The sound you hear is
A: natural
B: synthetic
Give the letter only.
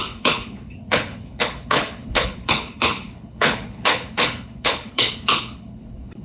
B